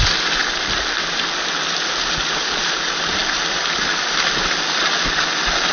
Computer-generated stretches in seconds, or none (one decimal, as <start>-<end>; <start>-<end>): none